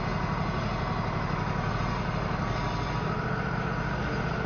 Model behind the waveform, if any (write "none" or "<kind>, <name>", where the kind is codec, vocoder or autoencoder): none